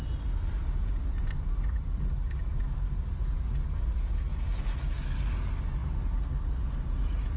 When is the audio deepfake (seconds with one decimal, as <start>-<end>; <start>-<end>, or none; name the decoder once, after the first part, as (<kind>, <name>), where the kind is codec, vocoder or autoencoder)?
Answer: none